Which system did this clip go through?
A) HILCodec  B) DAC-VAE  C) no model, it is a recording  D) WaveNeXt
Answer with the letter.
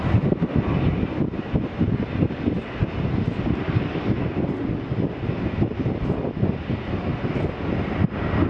C